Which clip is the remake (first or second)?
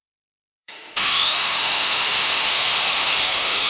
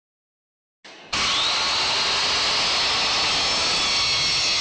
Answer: first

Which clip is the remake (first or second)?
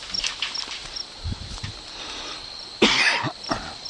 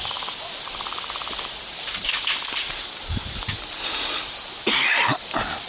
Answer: second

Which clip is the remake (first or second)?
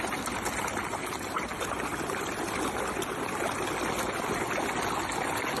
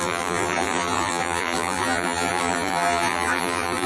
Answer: second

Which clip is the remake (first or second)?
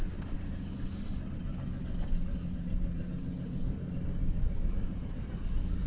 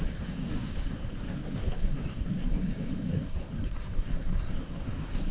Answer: second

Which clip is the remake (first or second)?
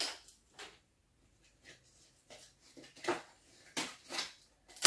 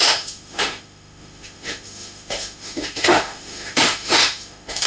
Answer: second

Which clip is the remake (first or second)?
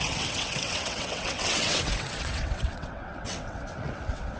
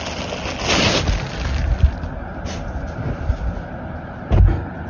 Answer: first